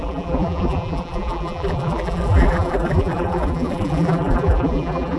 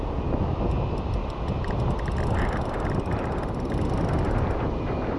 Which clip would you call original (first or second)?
second